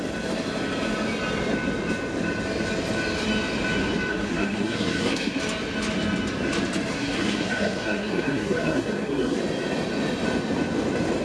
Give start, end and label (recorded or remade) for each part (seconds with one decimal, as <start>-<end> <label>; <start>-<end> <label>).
0.0-4.1 recorded; 4.1-5.4 remade; 5.4-6.9 recorded; 6.9-9.4 remade; 9.4-11.2 recorded